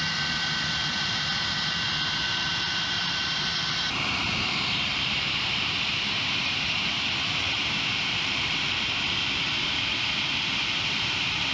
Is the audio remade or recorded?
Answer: remade